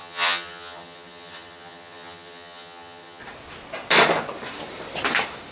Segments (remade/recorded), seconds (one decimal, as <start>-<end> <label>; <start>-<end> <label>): 0.0-3.2 remade; 3.2-5.5 recorded

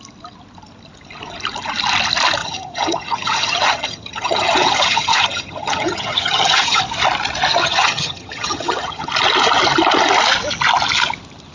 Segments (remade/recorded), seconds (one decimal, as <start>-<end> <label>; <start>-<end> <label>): 0.0-2.4 recorded; 2.4-6.8 remade; 6.8-7.5 recorded; 7.5-9.1 remade; 9.1-11.5 recorded

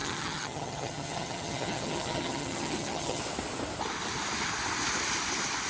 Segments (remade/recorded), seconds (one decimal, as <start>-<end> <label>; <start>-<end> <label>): 0.0-3.2 remade; 3.2-5.7 recorded